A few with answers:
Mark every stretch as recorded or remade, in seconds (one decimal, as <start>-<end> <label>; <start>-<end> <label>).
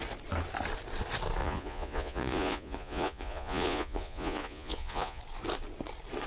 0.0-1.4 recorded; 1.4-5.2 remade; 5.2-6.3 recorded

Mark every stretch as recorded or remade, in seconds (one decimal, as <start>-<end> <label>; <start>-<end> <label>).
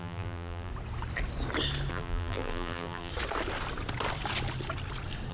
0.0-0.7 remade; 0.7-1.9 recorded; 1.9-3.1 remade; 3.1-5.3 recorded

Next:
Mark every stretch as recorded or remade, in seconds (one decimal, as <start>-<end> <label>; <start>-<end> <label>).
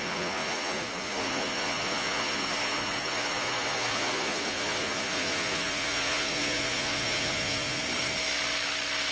0.0-7.8 remade; 7.8-9.1 recorded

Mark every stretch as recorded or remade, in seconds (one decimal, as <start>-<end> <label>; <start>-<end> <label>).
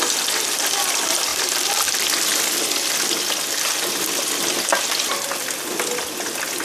0.0-6.6 recorded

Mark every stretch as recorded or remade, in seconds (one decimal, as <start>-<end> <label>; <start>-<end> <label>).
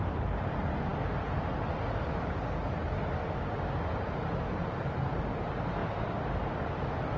0.0-4.6 recorded; 4.6-5.2 remade; 5.2-7.2 recorded